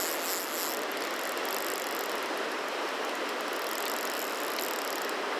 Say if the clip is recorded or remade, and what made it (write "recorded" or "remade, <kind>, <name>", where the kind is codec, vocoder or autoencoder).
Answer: recorded